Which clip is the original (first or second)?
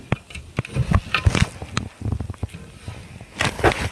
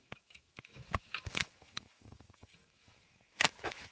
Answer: first